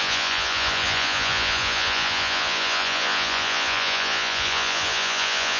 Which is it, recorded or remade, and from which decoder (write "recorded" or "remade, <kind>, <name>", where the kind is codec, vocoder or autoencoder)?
remade, vocoder, Vocos